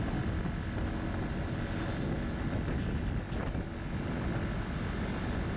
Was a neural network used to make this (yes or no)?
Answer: no